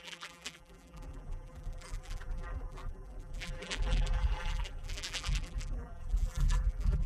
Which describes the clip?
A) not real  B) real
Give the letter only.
A